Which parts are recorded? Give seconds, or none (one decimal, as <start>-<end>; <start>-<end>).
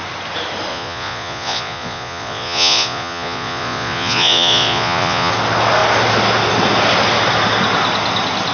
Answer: 0.0-0.7; 5.3-8.5